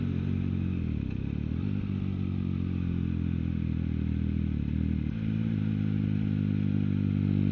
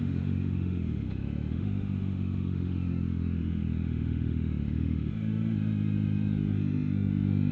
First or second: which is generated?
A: second